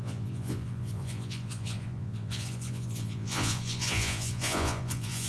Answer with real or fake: fake